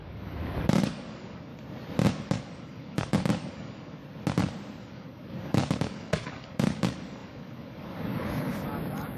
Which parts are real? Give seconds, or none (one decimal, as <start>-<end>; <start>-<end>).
1.5-2.1; 4.0-4.8